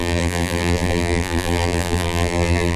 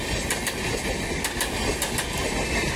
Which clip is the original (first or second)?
second